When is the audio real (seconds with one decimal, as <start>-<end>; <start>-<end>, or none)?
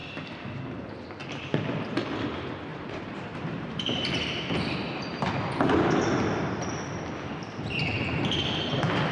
0.0-2.7; 4.6-9.1